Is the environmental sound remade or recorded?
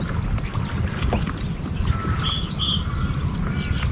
recorded